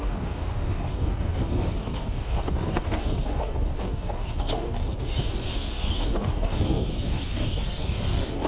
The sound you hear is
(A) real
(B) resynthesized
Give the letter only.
B